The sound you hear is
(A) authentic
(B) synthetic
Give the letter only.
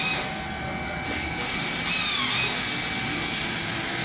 A